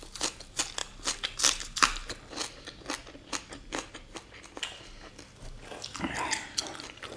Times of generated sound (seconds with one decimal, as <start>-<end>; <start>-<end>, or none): none